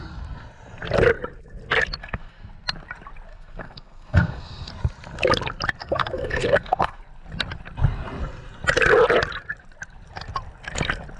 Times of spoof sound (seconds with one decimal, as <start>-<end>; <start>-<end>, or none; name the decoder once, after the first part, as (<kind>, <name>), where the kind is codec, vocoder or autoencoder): 2.0-2.5 (codec, SNAC); 3.3-4.7; 5.8-7.0